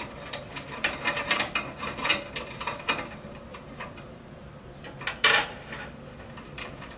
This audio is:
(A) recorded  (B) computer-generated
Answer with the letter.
B